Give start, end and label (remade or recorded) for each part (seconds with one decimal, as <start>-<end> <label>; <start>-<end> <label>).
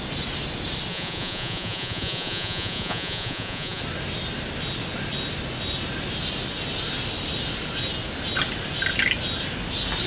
0.0-0.9 recorded; 0.9-3.8 remade; 3.8-10.1 recorded